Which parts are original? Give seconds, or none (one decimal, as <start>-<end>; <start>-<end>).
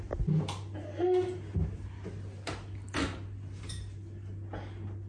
0.0-5.1